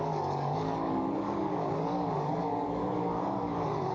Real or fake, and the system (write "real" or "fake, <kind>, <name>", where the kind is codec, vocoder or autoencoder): fake, codec, DAC